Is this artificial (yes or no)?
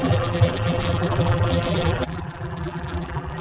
yes